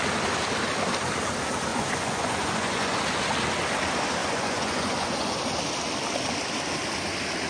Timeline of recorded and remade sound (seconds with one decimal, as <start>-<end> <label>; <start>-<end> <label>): 0.0-1.7 recorded; 1.7-3.0 remade; 3.0-4.2 recorded; 4.2-5.4 remade; 5.4-7.5 recorded